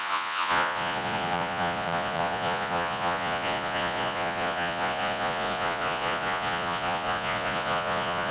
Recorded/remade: remade